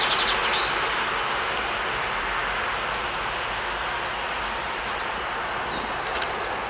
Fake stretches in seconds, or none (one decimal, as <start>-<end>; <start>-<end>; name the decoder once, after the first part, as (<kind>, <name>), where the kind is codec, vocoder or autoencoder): none

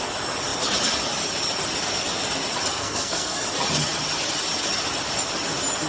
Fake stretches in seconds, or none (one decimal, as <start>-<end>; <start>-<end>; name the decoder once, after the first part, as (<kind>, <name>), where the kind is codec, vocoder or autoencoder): 2.7-3.4 (codec, SNAC)

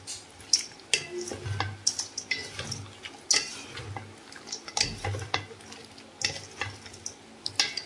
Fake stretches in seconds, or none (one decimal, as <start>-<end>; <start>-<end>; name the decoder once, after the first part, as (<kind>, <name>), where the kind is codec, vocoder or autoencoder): none

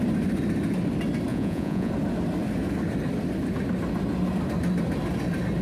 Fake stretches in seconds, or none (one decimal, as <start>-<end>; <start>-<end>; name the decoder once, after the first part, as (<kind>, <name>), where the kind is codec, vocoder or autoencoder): 1.3-1.9 (vocoder, Vocos)